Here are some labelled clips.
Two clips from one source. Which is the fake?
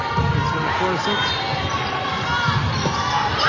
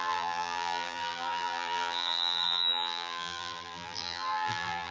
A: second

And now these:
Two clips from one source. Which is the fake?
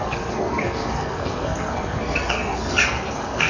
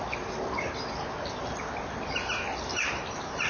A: first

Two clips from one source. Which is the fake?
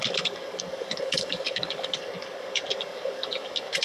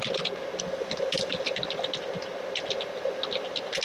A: first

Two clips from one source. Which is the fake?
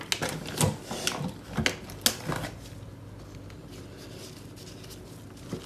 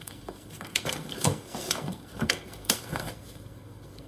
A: second